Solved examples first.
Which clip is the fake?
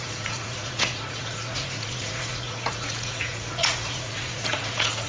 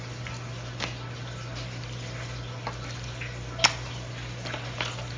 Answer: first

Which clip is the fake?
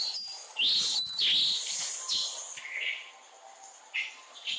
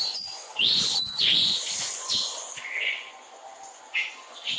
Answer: second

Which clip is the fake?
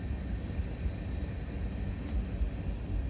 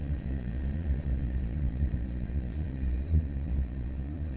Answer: second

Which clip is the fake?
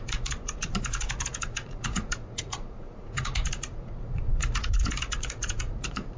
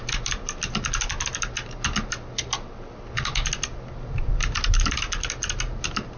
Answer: first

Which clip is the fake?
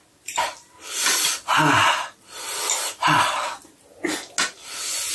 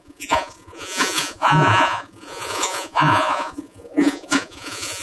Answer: second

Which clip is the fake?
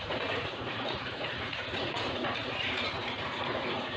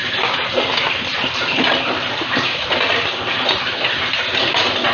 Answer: first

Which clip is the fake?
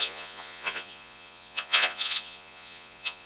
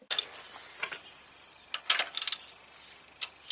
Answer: first